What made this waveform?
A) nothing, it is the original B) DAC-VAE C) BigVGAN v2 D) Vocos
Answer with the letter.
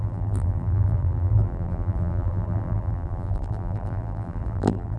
C